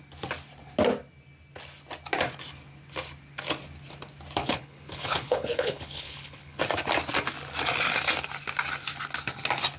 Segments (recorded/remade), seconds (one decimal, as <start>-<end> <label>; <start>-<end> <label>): 0.0-4.4 recorded; 4.4-6.6 remade; 6.6-9.8 recorded